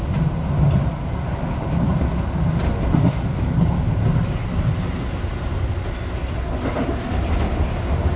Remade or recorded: recorded